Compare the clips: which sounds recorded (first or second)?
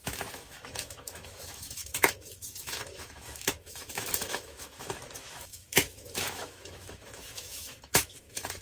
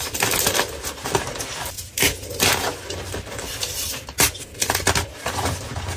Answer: second